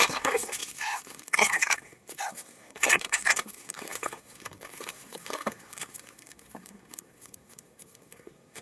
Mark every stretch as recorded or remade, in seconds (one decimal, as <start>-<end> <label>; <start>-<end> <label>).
0.0-8.6 remade